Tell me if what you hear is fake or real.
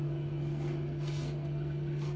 fake